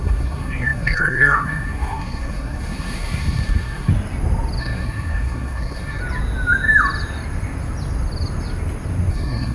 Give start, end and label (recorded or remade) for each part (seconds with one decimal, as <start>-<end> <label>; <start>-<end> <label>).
0.0-3.9 remade; 3.9-4.6 recorded; 4.6-6.0 remade; 6.0-9.1 recorded; 9.1-9.5 remade